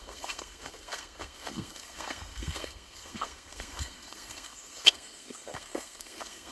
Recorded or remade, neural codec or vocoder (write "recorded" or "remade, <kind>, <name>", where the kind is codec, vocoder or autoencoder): remade, codec, SNAC